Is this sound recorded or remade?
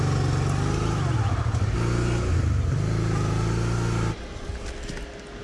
recorded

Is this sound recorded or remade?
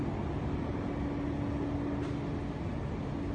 recorded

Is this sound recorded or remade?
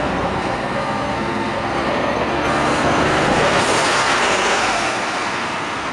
remade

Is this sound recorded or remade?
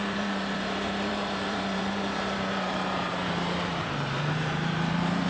remade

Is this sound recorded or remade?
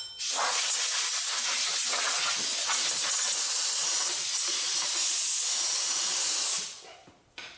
recorded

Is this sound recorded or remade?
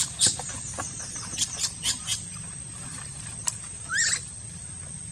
recorded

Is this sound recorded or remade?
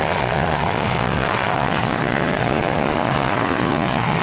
remade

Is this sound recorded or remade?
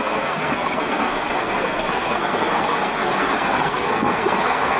remade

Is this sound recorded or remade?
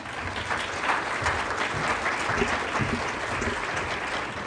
recorded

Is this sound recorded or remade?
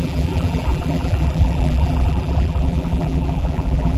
remade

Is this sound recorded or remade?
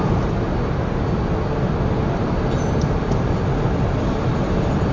recorded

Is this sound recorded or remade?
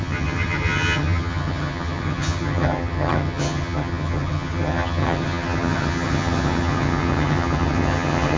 remade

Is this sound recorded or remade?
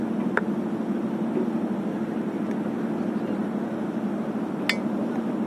recorded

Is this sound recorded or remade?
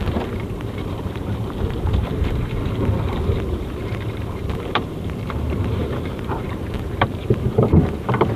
remade